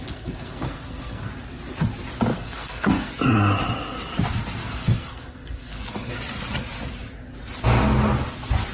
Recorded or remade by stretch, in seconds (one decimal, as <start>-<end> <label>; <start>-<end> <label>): 0.0-1.3 remade; 1.3-2.3 recorded; 2.3-3.1 remade; 3.1-4.6 recorded; 4.6-6.2 remade; 6.2-8.7 recorded